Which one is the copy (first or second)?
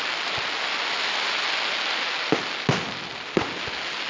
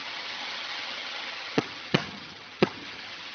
second